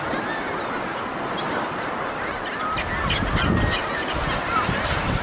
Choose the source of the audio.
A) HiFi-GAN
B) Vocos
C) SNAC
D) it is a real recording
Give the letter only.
D